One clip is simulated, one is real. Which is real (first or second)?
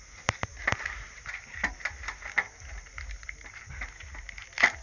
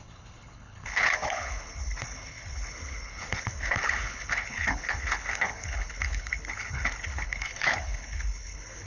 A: first